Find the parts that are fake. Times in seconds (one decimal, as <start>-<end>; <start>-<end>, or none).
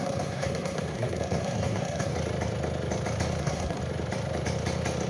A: 0.0-2.1; 3.4-3.8